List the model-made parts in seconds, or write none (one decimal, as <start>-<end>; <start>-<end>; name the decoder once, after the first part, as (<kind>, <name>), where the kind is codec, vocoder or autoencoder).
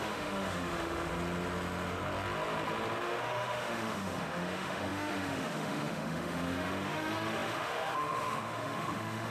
0.0-1.1 (autoencoder, DAC-VAE); 3.0-9.3